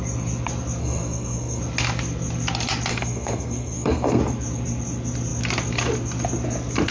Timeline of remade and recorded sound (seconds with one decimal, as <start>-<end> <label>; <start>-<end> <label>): 0.0-0.8 recorded; 0.8-1.6 remade; 1.6-2.9 recorded; 2.9-4.2 remade; 4.2-6.9 recorded